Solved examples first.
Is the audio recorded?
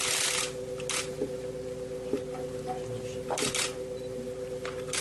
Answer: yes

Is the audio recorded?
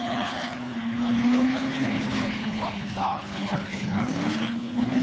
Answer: no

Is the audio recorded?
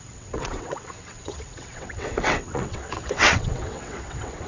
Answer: no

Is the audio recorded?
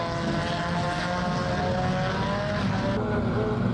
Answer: yes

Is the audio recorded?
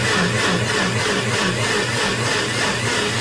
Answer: yes